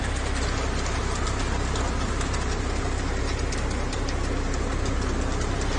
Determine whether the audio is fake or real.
real